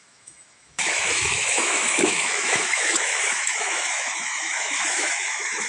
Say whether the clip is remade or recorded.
remade